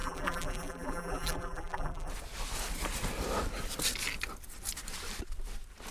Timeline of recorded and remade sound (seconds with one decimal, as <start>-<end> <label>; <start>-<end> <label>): 0.0-2.1 remade; 2.1-5.9 recorded